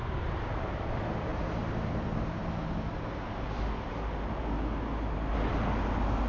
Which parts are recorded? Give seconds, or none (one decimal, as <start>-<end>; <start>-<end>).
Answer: 1.3-1.9; 2.4-6.3